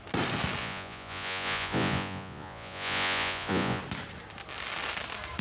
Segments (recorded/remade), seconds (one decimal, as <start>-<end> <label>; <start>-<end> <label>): 0.0-0.6 recorded; 0.6-3.8 remade; 3.8-5.4 recorded